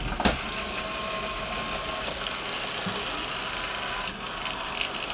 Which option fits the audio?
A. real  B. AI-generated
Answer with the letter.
A